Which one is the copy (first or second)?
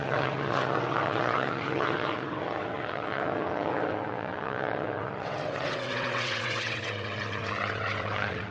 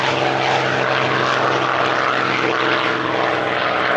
first